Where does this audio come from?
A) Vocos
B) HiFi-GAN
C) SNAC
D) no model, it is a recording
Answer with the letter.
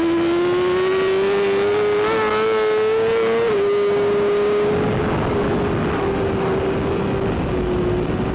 D